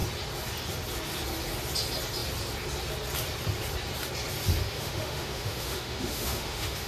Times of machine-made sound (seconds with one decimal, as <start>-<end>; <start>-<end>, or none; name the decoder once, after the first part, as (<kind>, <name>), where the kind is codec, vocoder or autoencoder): 4.6-6.9 (autoencoder, DAC-VAE)